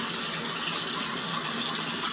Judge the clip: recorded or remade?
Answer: recorded